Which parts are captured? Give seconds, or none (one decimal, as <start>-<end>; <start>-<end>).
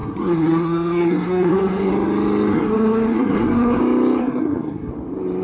1.9-2.5; 3.8-4.2; 4.9-5.4